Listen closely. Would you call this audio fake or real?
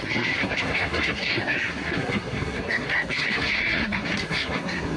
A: fake